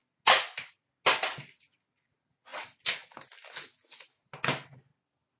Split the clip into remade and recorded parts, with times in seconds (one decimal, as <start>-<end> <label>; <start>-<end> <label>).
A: 0.0-5.4 recorded